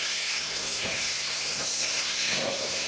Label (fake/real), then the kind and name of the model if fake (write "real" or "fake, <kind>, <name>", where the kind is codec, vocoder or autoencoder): fake, codec, SNAC